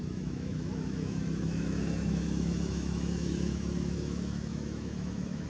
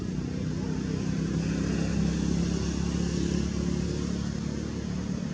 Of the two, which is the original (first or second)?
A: second